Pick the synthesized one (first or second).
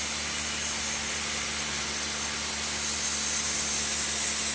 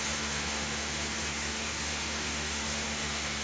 second